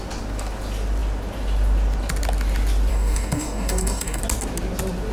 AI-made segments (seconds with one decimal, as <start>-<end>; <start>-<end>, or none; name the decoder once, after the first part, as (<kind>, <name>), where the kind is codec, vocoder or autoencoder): 2.9-4.2 (codec, DAC)